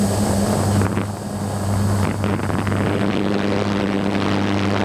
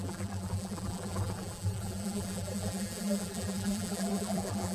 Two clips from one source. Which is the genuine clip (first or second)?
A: first